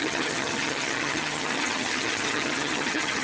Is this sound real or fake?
fake